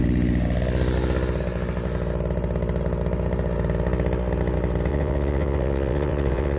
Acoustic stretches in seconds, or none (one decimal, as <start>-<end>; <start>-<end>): 0.0-4.9